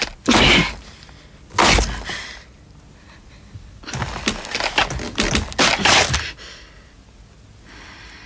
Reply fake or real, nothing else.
real